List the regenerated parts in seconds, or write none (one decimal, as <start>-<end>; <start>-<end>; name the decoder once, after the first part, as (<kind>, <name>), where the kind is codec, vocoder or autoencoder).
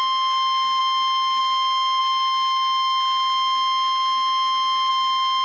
none